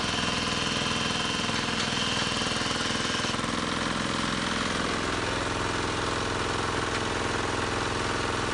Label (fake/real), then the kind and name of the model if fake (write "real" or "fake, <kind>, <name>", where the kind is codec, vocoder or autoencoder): real